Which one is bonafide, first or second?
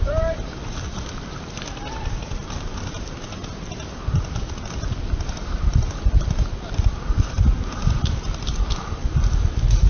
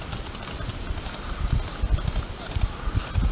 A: second